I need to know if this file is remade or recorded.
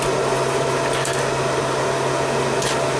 recorded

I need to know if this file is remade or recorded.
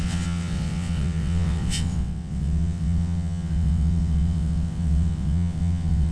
remade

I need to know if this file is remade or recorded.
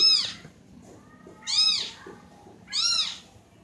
recorded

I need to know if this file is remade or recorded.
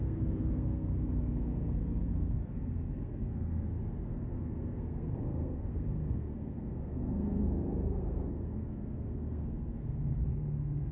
remade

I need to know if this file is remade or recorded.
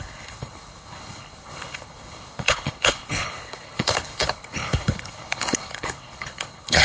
remade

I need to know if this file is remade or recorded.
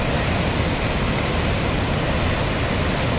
recorded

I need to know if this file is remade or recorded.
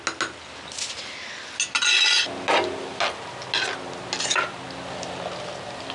recorded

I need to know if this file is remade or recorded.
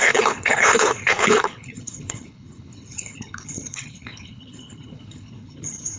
remade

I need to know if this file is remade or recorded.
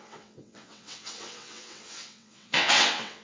remade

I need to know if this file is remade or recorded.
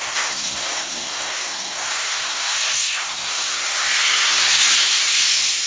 remade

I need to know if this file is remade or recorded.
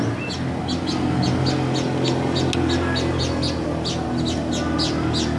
recorded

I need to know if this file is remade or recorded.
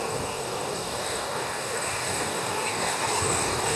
remade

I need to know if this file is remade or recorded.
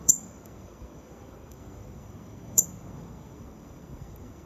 remade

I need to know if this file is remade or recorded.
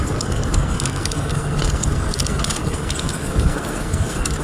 remade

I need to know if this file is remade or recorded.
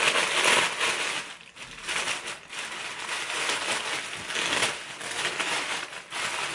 recorded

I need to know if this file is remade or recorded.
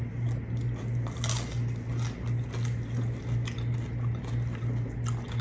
recorded